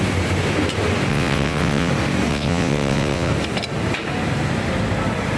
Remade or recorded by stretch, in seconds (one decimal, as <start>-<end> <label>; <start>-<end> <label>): 0.0-1.1 recorded; 1.1-1.9 remade; 1.9-2.3 recorded; 2.3-3.3 remade; 3.3-5.4 recorded